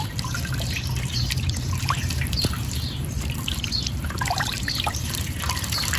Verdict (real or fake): fake